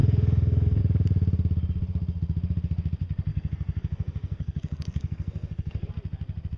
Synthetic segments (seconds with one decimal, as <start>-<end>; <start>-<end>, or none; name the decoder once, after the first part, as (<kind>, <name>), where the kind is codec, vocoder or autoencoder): 0.0-0.8 (codec, SNAC); 3.3-5.9